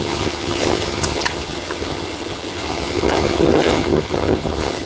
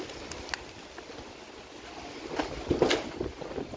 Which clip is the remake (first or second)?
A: first